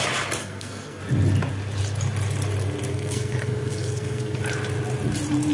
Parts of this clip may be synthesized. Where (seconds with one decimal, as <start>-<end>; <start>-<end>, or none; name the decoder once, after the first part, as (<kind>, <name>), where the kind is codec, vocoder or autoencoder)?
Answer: 0.4-1.0 (codec, SNAC); 2.9-4.4